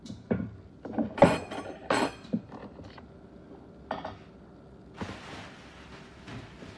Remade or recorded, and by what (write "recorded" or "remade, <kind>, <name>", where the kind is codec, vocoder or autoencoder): recorded